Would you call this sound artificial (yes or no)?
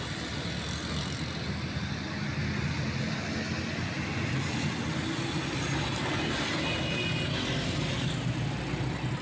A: no